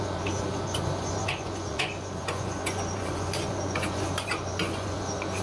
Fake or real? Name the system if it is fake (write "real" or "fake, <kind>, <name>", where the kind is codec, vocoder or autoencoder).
fake, vocoder, Vocos